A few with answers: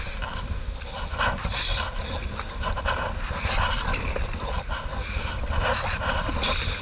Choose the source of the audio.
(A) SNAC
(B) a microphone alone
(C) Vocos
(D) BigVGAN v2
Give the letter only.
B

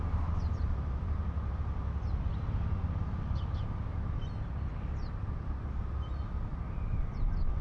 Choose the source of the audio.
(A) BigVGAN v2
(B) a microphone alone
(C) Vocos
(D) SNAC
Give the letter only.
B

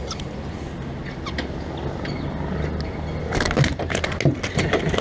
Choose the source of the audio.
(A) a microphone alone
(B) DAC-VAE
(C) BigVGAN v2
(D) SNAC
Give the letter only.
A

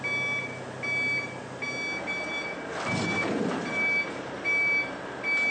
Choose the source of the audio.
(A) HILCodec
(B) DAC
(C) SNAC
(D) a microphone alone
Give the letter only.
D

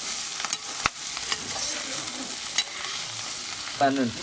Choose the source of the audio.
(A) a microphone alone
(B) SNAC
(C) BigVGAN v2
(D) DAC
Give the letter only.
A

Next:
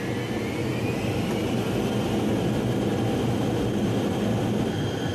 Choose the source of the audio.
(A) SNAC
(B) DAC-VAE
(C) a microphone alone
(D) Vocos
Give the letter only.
C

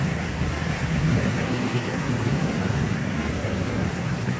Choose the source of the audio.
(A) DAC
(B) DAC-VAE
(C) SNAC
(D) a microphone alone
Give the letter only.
C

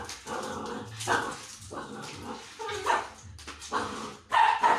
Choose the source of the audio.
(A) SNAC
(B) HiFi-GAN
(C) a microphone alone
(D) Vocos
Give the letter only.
C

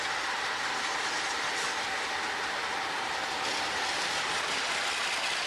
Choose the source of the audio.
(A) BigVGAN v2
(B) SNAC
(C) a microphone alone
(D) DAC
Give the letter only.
C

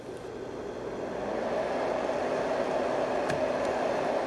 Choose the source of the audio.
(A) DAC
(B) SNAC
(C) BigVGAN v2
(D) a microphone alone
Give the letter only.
D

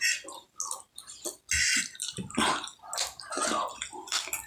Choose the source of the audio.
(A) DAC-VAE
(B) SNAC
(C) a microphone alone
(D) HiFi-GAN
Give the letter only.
C